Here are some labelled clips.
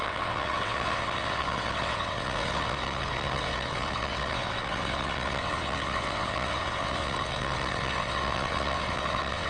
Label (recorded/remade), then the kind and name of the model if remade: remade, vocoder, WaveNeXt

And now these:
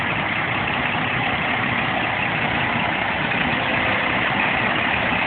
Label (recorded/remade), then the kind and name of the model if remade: recorded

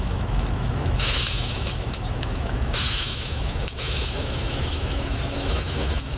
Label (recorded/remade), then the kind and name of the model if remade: remade, autoencoder, DAC-VAE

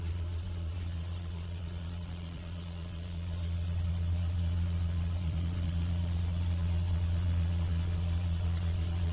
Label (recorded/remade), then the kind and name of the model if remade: remade, vocoder, Vocos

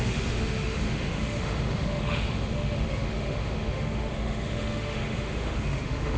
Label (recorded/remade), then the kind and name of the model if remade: remade, autoencoder, DAC-VAE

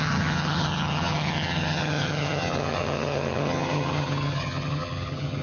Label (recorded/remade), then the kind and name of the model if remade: remade, vocoder, HiFi-GAN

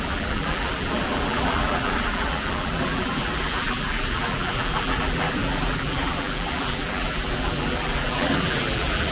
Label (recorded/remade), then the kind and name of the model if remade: remade, vocoder, BigVGAN v2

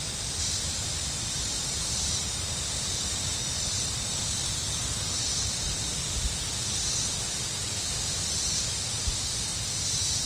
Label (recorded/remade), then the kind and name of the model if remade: remade, vocoder, BigVGAN v2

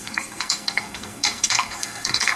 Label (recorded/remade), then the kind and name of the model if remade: remade, codec, SNAC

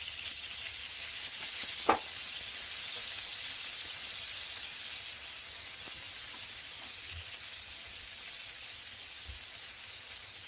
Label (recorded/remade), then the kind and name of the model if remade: recorded